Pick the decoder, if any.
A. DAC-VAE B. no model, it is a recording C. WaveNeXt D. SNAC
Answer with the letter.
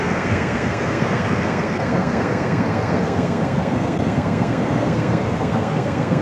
D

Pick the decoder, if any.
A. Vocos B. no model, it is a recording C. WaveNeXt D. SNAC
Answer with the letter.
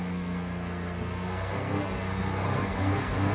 D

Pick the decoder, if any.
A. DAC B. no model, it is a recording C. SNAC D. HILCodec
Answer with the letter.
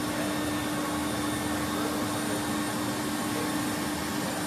B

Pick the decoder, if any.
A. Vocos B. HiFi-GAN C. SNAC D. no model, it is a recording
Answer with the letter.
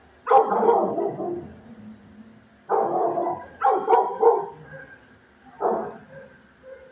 D